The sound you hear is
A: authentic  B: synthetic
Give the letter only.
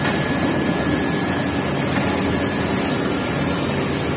A